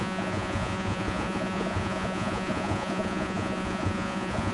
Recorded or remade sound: remade